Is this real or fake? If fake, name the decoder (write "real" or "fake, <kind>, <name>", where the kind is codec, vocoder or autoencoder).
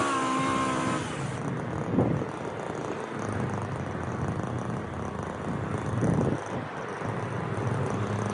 real